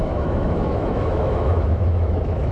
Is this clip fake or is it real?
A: fake